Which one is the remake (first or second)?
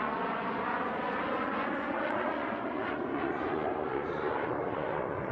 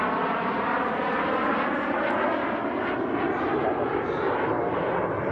first